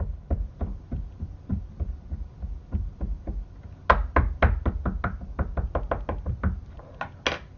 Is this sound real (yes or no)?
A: yes